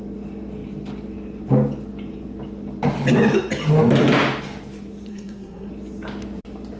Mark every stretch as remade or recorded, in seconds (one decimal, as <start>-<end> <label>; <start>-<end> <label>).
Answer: 0.0-5.1 recorded; 5.1-5.7 remade; 5.7-6.8 recorded